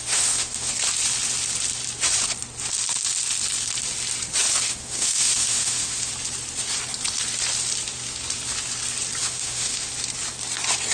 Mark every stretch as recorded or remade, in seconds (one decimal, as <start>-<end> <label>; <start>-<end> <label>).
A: 0.0-0.7 remade; 0.7-4.7 recorded; 4.7-6.1 remade; 6.1-9.2 recorded; 9.2-9.9 remade; 9.9-10.9 recorded